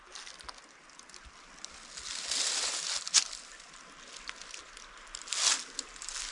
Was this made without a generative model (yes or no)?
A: yes